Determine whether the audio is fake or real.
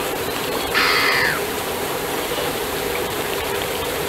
fake